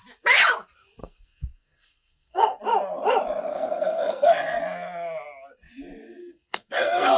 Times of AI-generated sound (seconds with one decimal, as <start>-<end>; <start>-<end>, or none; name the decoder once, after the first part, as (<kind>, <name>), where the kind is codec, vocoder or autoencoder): 1.0-2.6 (codec, SNAC); 3.5-4.6; 6.2-7.2

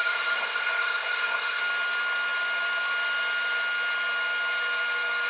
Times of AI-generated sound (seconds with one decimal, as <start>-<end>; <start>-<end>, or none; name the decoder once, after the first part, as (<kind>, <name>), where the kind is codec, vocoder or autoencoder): 0.0-1.6 (codec, SNAC)

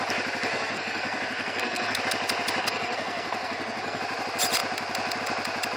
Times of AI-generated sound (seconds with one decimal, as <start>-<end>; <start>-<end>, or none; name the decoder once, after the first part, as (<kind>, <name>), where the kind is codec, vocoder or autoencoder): 0.5-2.0 (codec, SNAC); 2.6-4.0

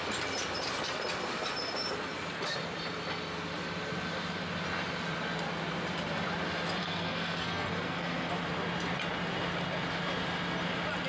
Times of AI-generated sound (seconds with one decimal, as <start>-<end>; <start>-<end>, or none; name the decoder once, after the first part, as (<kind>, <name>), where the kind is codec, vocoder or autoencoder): 6.8-8.3 (codec, SNAC)

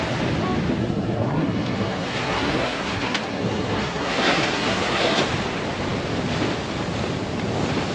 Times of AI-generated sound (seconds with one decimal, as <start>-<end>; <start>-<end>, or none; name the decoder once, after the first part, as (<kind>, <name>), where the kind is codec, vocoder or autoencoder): 0.8-5.2 (codec, SNAC)

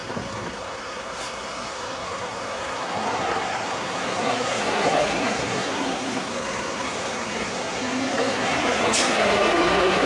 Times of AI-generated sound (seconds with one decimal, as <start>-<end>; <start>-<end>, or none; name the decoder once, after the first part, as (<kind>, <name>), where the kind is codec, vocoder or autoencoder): 0.0-10.1 (codec, SNAC)

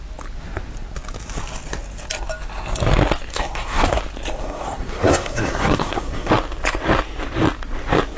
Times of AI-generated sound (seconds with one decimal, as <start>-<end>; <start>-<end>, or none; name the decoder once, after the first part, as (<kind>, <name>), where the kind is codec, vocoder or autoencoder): 3.3-4.0 (codec, SNAC); 4.4-6.3

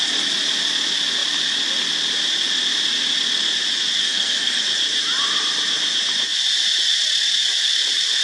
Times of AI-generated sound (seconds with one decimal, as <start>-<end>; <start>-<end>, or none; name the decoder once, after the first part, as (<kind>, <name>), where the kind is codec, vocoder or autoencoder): 4.0-4.6 (codec, SNAC)